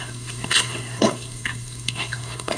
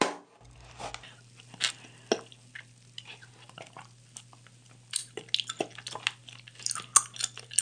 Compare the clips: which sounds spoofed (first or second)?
first